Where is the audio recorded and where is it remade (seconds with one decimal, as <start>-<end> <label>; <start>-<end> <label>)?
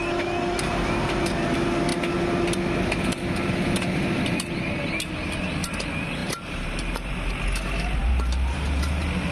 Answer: 0.0-6.2 recorded; 6.2-7.3 remade; 7.3-8.0 recorded; 8.0-8.8 remade; 8.8-9.3 recorded